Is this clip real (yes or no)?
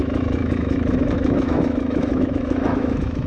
no